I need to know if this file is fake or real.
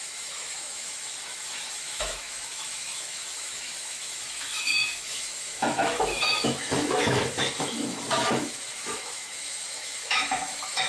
fake